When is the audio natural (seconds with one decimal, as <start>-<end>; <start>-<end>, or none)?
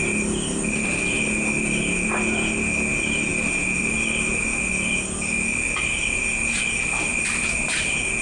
0.0-8.2